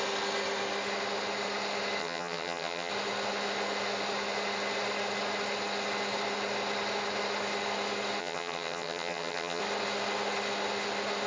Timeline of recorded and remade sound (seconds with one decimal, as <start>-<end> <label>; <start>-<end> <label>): 0.0-2.0 recorded; 2.0-2.9 remade; 2.9-8.2 recorded; 8.2-9.6 remade; 9.6-11.3 recorded